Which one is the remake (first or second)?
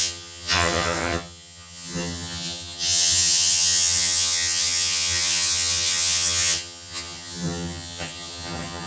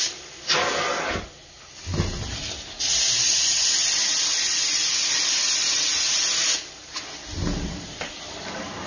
first